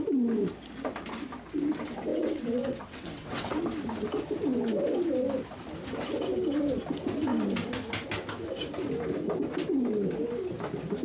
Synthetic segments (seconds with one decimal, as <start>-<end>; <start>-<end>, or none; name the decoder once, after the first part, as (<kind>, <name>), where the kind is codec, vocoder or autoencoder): 2.1-3.6 (vocoder, WaveNeXt)